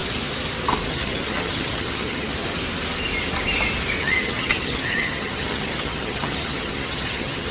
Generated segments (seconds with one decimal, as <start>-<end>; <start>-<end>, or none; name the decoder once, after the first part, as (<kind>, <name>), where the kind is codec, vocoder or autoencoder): 0.9-2.3 (vocoder, HiFi-GAN); 4.0-7.5